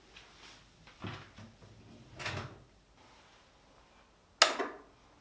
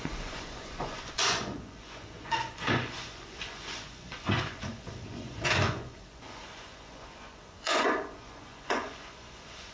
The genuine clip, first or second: first